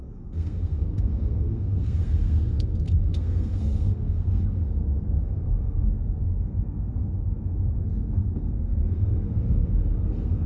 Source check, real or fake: fake